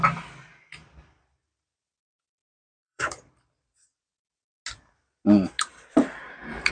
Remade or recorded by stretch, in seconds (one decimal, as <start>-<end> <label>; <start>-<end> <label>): 0.0-2.4 recorded; 2.4-3.3 remade; 3.3-5.7 recorded; 5.7-6.7 remade